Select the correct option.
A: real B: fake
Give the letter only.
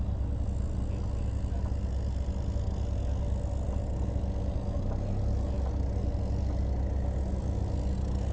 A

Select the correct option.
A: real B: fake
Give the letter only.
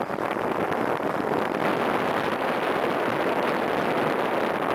A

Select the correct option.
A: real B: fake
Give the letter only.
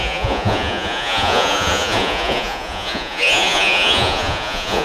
B